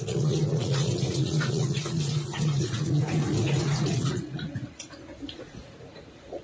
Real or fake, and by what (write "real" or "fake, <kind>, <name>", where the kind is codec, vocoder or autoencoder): fake, vocoder, Vocos